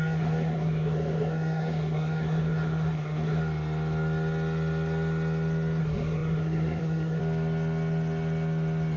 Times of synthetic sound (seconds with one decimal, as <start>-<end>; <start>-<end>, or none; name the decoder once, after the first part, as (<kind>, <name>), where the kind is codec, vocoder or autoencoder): 0.0-3.4 (codec, SNAC); 5.8-7.2